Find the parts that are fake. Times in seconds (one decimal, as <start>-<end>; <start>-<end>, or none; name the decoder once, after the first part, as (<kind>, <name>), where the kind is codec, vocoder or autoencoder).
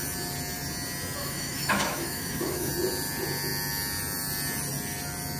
1.2-2.7 (autoencoder, DAC-VAE)